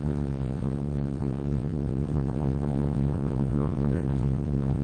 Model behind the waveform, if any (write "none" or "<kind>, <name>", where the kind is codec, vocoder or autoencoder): vocoder, WaveNeXt